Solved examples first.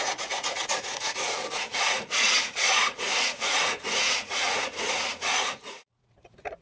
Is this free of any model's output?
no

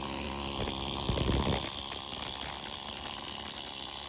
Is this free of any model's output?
yes